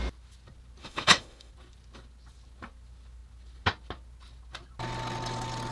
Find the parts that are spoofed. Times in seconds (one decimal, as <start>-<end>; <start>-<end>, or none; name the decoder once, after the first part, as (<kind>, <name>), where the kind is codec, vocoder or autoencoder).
0.8-1.5 (autoencoder, DAC-VAE)

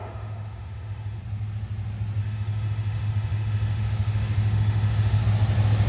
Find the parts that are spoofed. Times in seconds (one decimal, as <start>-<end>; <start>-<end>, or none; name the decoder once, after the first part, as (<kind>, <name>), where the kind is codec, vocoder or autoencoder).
0.0-1.2 (autoencoder, DAC-VAE); 2.2-5.2